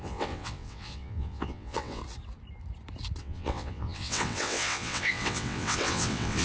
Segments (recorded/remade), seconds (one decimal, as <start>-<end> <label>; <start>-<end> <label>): 0.0-2.0 remade; 2.0-3.2 recorded; 3.2-6.4 remade

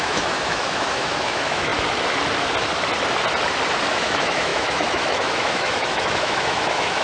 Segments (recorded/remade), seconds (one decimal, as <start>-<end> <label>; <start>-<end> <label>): 0.0-1.7 remade; 1.7-3.9 recorded; 3.9-7.0 remade

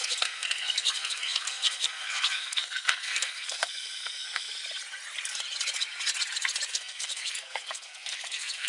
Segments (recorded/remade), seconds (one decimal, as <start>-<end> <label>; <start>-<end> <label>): 0.0-4.5 remade; 4.5-6.7 recorded; 6.7-8.7 remade

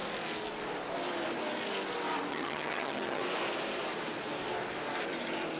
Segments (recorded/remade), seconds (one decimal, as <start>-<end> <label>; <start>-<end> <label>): 0.0-2.3 recorded; 2.3-3.2 remade; 3.2-5.6 recorded

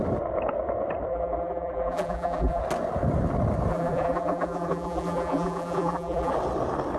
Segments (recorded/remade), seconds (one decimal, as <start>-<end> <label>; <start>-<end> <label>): 0.0-1.1 recorded; 1.1-2.6 remade; 2.6-3.7 recorded; 3.7-6.3 remade; 6.3-7.0 recorded

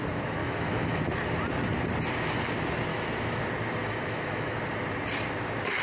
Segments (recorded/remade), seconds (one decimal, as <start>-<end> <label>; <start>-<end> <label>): 0.0-0.4 recorded; 0.4-1.0 remade; 1.0-2.9 recorded; 2.9-3.4 remade; 3.4-3.8 recorded; 3.8-4.6 remade; 4.6-5.8 recorded

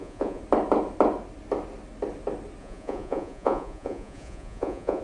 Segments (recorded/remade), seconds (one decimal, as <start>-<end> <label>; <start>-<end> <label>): 0.0-0.4 remade; 0.4-2.6 recorded; 2.6-5.0 remade